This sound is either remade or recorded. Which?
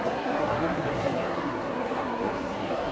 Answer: remade